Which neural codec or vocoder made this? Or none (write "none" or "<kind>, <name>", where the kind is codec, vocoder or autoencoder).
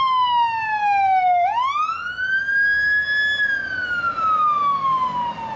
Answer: none